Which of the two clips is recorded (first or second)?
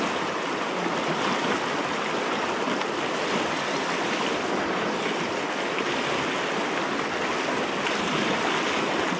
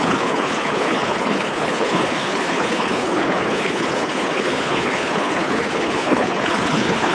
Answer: first